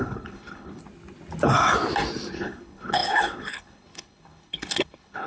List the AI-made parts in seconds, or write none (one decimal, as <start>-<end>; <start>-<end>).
0.0-0.8; 2.3-5.3